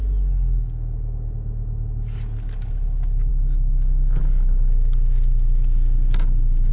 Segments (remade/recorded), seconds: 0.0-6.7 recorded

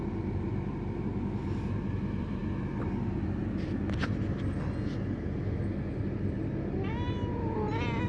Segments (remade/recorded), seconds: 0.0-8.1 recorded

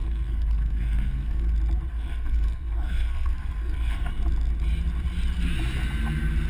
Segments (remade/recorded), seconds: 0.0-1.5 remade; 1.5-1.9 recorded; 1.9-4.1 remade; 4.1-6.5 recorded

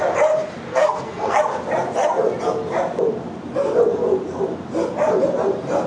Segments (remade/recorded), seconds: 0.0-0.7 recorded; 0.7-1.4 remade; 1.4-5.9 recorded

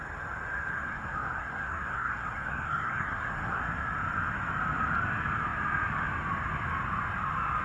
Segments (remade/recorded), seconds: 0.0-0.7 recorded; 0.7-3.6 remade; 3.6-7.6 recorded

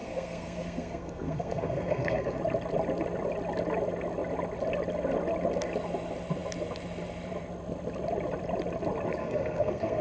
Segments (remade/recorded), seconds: 0.0-2.4 remade; 2.4-9.2 recorded; 9.2-10.0 remade

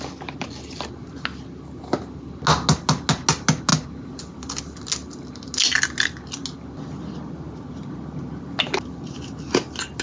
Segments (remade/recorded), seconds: 0.0-10.0 recorded